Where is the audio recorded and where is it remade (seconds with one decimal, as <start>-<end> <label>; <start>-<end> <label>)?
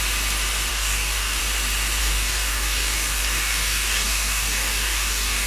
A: 0.0-0.7 recorded; 0.7-1.4 remade; 1.4-2.0 recorded; 2.0-5.5 remade